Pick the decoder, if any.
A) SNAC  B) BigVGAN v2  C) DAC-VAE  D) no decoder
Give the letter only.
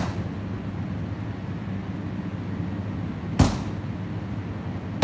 D